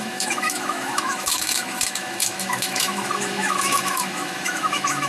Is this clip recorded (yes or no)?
no